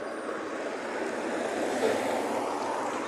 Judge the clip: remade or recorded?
recorded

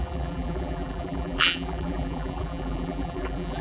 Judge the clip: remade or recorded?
remade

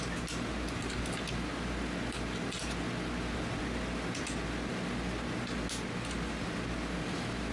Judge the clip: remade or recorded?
recorded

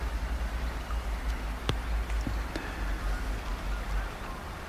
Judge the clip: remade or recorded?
recorded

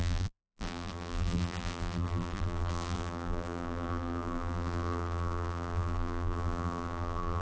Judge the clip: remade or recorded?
remade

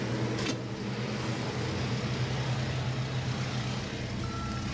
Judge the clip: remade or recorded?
recorded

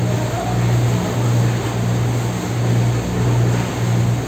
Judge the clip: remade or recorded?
recorded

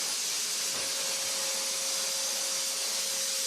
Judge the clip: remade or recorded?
recorded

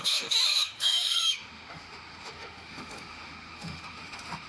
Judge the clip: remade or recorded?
remade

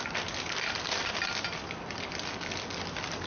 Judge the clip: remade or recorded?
recorded